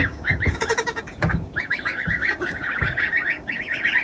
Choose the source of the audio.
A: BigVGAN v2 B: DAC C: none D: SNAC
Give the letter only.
B